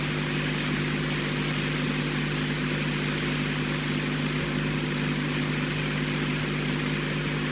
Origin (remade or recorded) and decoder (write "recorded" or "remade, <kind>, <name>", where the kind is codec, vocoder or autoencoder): recorded